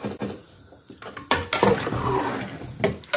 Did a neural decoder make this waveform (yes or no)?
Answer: no